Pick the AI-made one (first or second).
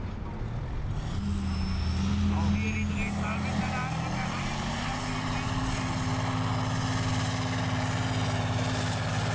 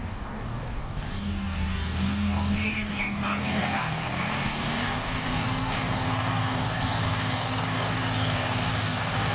second